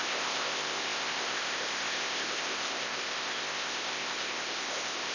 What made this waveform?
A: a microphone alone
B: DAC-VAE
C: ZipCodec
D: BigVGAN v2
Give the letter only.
C